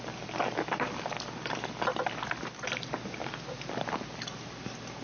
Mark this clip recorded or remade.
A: recorded